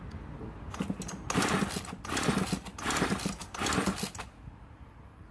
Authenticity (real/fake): real